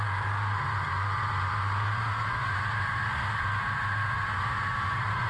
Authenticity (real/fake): fake